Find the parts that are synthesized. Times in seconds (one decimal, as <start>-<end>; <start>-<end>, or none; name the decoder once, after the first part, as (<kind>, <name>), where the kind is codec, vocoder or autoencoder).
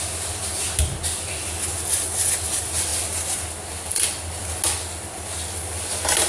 none